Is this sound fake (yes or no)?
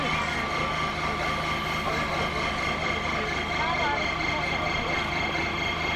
no